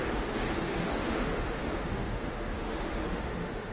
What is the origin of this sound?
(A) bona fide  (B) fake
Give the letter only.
B